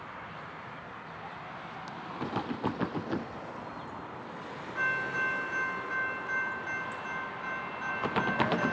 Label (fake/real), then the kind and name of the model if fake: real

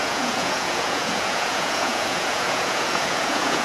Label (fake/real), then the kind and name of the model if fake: fake, vocoder, Vocos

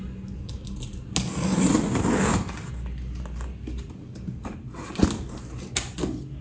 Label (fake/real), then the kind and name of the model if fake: real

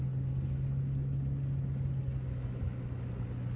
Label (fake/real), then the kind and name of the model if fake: real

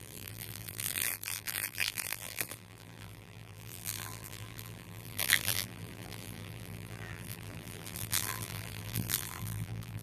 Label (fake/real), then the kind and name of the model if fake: fake, vocoder, BigVGAN v2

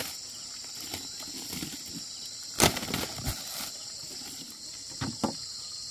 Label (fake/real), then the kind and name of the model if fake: real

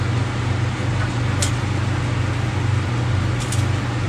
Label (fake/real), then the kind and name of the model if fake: real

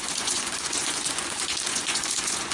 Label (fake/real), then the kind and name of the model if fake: fake, vocoder, Vocos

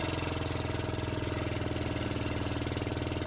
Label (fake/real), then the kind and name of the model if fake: real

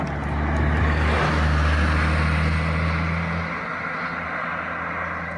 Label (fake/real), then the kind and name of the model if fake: real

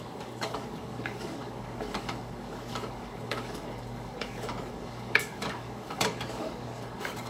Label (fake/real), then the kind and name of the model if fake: fake, codec, DAC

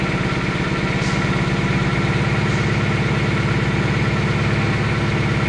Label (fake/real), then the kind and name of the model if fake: real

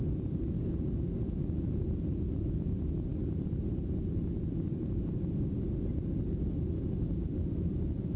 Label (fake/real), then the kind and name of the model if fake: real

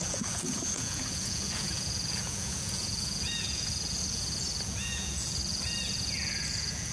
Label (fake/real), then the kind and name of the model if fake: fake, vocoder, Vocos